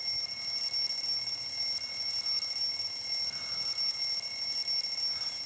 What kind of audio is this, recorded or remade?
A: recorded